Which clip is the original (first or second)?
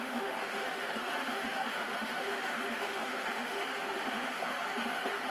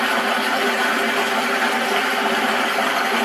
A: second